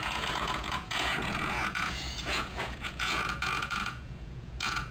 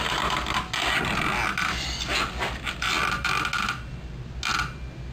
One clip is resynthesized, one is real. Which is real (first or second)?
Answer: second